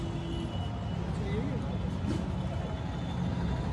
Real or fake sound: real